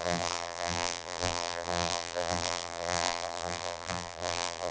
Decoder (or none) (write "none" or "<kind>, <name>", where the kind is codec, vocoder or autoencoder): vocoder, BigVGAN v2